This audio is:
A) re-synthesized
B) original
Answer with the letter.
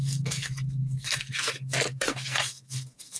A